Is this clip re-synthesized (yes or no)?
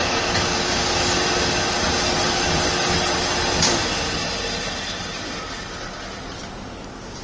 no